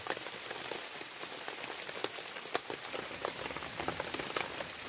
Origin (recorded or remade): recorded